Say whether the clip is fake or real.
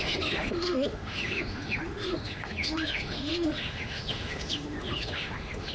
fake